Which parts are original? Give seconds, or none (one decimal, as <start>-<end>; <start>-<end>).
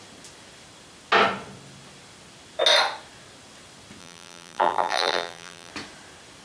0.0-4.0; 5.7-6.4